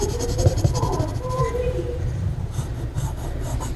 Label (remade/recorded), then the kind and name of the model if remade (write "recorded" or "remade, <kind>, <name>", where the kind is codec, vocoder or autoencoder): remade, vocoder, BigVGAN v2